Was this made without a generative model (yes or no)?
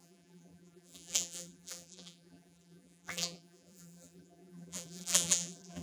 no